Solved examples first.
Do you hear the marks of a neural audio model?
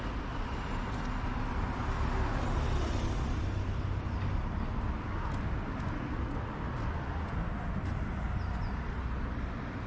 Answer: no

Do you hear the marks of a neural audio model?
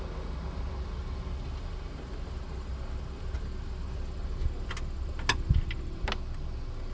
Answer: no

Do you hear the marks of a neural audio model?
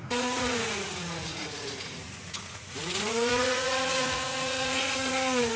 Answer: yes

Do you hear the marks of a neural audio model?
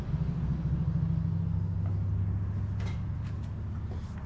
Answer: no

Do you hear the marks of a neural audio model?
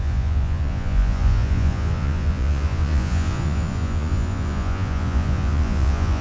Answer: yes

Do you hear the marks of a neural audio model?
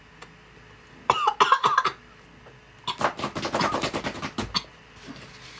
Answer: no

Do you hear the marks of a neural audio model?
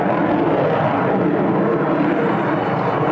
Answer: no